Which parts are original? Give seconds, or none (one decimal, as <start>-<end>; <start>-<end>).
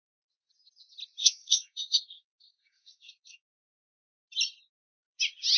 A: 0.0-1.2; 3.5-5.6